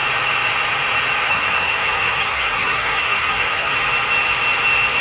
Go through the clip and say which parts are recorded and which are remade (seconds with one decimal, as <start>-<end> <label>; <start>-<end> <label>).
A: 0.0-1.3 recorded; 1.3-3.7 remade; 3.7-5.0 recorded